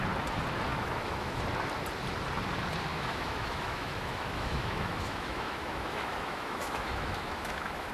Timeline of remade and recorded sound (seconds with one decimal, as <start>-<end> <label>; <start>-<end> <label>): 0.0-0.7 recorded; 0.7-1.4 remade; 1.4-2.9 recorded; 2.9-7.9 remade